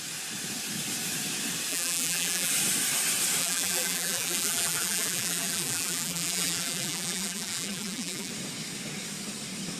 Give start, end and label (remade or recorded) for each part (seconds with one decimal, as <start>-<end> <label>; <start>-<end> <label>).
0.0-1.7 recorded; 1.7-2.5 remade; 2.5-3.4 recorded; 3.4-8.3 remade; 8.3-9.8 recorded